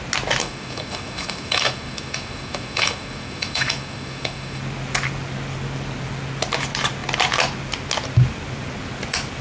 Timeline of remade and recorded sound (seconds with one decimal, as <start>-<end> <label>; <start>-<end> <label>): 0.0-0.4 recorded; 0.4-4.6 remade; 4.6-9.4 recorded